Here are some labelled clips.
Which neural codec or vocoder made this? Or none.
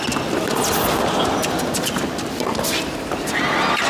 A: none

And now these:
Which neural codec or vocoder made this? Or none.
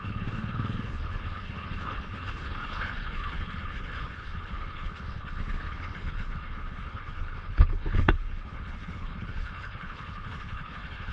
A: codec, HILCodec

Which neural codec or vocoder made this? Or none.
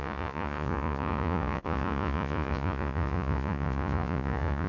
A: vocoder, Vocos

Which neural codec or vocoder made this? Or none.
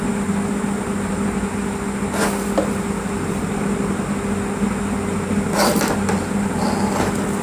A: none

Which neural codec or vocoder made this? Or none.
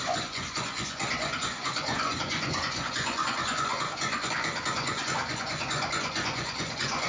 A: vocoder, Vocos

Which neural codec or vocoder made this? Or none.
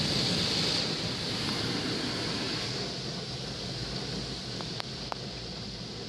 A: none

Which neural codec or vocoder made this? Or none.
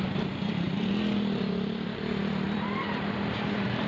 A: vocoder, BigVGAN v2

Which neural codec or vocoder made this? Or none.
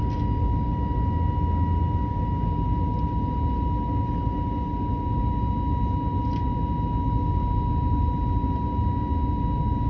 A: none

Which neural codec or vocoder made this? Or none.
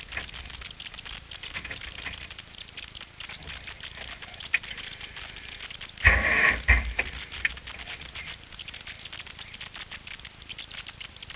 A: none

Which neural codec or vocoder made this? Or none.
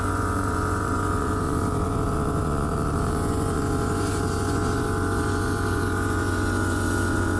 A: vocoder, Vocos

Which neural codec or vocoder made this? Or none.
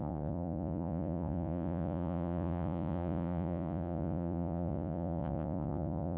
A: vocoder, Vocos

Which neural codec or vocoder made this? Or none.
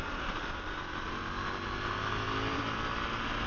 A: none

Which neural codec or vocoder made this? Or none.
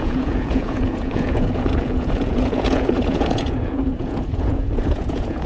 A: vocoder, Vocos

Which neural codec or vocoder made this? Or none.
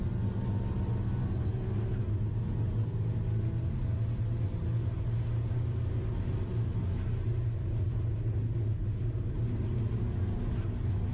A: none